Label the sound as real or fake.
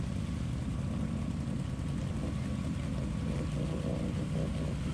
real